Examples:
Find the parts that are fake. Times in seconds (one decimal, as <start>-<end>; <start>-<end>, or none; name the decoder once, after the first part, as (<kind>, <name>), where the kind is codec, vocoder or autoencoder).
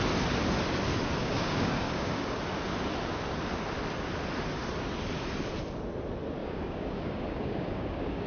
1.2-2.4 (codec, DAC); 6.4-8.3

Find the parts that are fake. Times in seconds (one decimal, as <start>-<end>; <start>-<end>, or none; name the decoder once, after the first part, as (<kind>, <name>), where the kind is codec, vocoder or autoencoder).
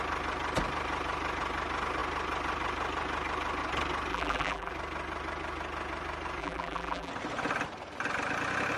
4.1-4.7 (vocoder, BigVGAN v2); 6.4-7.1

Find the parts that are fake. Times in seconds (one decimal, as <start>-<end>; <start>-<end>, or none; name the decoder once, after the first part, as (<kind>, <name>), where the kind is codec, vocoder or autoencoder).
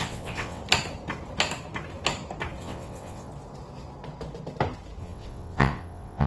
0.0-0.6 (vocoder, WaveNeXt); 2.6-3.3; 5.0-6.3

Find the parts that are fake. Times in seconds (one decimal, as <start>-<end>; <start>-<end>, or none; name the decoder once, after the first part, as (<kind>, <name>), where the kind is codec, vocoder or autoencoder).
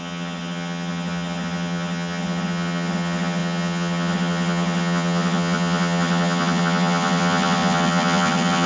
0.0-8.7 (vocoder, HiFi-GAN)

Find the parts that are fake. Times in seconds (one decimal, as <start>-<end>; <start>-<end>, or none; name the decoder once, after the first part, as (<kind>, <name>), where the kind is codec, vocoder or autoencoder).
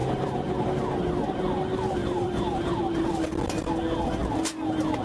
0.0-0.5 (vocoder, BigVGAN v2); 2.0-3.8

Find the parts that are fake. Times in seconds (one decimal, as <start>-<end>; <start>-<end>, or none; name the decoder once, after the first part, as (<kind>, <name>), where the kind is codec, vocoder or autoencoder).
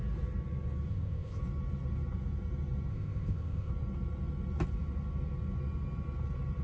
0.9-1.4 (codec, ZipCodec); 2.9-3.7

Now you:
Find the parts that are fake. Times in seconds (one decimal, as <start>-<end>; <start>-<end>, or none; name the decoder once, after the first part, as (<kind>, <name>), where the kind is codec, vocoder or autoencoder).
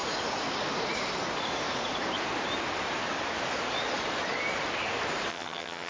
5.3-5.9 (vocoder, HiFi-GAN)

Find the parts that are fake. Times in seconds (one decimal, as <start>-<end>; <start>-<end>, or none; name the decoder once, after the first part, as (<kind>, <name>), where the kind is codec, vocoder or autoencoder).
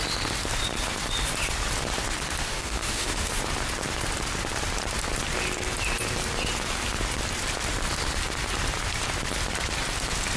2.4-3.3 (codec, DAC)